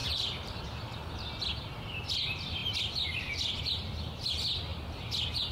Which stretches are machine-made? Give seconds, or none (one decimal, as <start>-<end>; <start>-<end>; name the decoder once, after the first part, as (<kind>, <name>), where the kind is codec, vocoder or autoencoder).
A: 0.0-0.6 (vocoder, BigVGAN v2); 2.6-3.6